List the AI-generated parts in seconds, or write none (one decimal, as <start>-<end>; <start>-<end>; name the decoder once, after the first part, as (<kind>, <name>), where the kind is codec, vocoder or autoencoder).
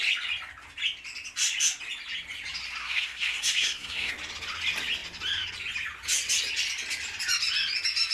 2.8-4.1 (codec, SNAC)